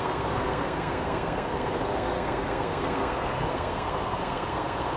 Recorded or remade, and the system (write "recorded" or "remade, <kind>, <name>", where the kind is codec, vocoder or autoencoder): remade, codec, SNAC